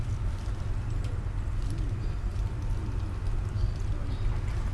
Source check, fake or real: real